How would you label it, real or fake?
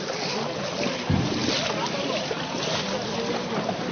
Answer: real